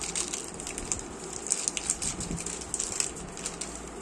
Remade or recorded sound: recorded